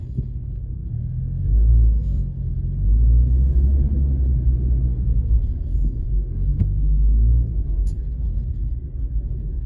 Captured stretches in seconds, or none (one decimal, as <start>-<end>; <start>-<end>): 2.5-4.8